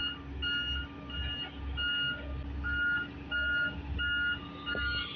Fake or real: real